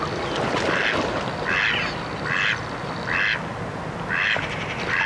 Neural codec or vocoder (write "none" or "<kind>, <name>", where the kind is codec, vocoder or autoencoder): none